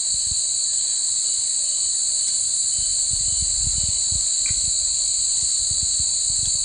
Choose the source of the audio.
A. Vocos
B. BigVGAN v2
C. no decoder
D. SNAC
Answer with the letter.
C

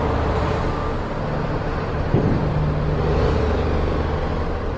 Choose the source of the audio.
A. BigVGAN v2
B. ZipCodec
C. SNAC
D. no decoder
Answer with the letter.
D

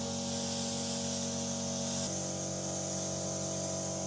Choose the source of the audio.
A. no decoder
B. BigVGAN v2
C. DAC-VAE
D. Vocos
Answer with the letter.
A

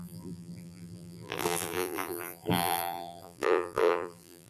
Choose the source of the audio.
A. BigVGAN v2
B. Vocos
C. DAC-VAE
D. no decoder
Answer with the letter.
A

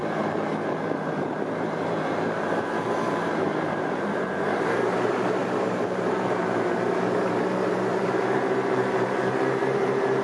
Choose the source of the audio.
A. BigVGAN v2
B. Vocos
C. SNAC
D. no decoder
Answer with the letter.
A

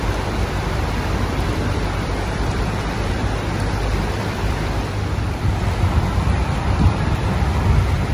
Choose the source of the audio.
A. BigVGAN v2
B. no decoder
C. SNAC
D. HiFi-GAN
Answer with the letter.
A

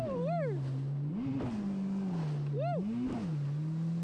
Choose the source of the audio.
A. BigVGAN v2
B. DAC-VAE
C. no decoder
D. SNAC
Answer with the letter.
C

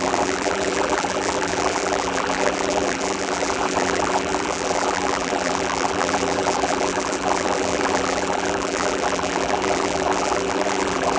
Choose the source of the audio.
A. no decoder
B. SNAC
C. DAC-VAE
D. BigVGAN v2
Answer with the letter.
D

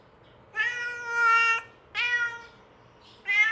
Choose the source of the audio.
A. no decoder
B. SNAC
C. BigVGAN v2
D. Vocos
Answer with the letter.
A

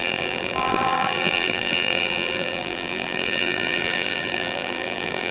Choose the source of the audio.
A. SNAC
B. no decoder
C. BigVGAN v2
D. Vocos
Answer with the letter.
C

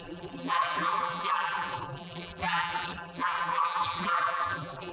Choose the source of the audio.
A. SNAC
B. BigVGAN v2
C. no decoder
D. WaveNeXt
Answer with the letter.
B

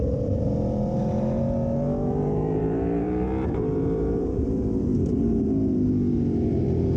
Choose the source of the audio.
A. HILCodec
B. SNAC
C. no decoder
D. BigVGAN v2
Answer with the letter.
D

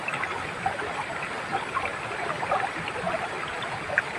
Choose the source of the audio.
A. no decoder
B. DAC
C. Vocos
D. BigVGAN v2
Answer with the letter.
A